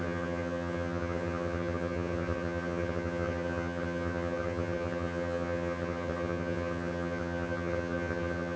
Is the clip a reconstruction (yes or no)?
yes